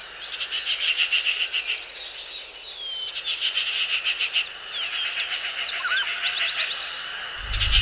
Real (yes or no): yes